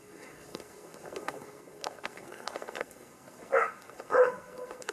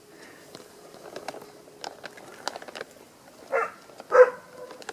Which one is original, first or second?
second